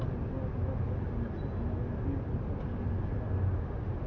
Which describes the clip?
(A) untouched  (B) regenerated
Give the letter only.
A